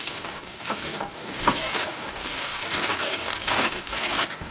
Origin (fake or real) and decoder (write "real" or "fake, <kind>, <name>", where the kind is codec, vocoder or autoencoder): fake, codec, DAC